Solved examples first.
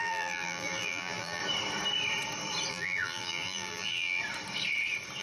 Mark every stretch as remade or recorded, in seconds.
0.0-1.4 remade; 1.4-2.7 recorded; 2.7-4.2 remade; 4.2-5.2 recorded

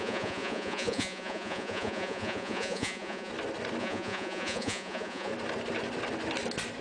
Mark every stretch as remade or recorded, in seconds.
0.0-3.3 remade; 3.3-3.8 recorded; 3.8-5.3 remade; 5.3-6.8 recorded

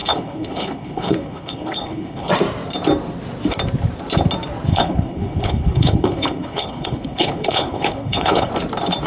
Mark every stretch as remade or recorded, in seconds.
0.0-2.3 remade; 2.3-4.7 recorded; 4.7-8.5 remade; 8.5-9.1 recorded

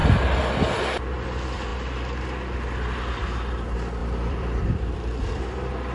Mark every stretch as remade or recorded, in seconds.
0.0-4.0 recorded; 4.0-4.7 remade; 4.7-5.9 recorded

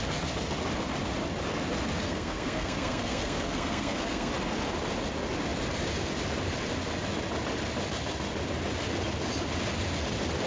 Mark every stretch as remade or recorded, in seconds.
0.0-2.0 recorded; 2.0-4.3 remade; 4.3-10.5 recorded